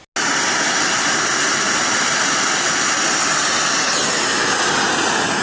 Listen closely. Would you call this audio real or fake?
real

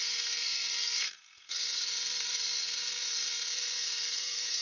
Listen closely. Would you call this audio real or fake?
fake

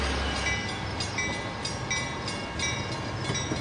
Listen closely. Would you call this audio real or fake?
real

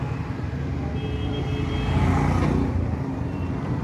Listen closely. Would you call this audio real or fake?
real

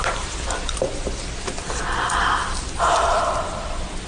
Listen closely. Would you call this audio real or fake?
real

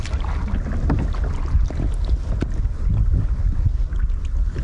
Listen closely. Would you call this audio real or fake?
real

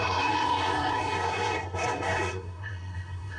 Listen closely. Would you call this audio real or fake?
fake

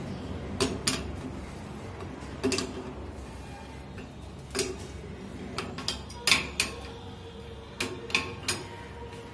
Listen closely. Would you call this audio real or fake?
real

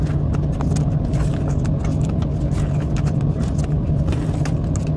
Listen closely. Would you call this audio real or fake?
real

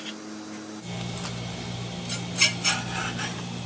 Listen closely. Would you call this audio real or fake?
real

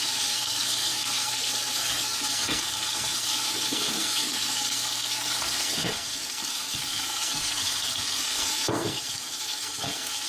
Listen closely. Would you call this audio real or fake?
fake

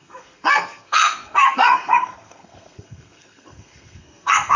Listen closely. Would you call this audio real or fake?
fake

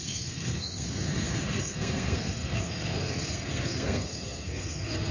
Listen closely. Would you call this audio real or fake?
fake